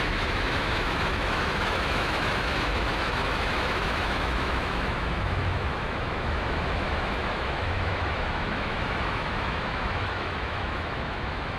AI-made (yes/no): yes